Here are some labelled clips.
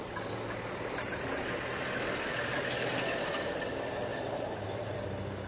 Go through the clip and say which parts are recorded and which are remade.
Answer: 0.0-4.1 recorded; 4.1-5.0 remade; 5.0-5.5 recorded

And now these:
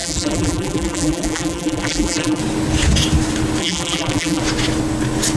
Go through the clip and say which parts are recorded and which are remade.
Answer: 0.0-2.4 remade; 2.4-3.6 recorded; 3.6-4.4 remade; 4.4-5.4 recorded